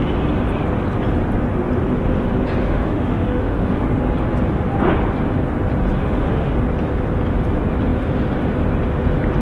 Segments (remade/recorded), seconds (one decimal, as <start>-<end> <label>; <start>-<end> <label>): 0.0-2.6 recorded; 2.6-4.0 remade; 4.0-6.0 recorded; 6.0-6.5 remade; 6.5-9.4 recorded